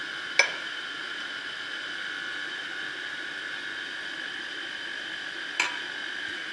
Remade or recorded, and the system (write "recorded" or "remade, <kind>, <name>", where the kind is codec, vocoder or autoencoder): recorded